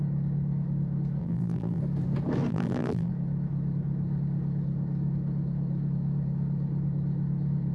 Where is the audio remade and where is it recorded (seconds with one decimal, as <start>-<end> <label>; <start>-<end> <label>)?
0.0-1.2 recorded; 1.2-1.8 remade; 1.8-2.5 recorded; 2.5-3.1 remade; 3.1-7.7 recorded